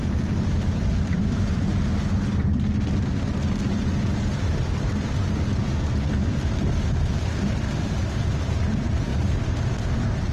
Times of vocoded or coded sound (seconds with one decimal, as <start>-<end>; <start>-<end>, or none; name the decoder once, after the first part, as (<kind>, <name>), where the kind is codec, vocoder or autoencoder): 0.0-1.7 (vocoder, BigVGAN v2); 6.3-10.3